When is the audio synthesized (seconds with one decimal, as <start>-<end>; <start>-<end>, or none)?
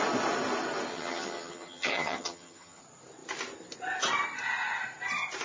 0.9-2.8